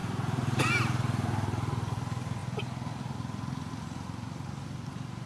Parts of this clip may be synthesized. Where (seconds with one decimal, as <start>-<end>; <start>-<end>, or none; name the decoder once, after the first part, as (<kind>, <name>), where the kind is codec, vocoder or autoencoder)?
none